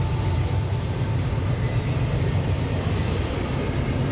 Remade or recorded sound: recorded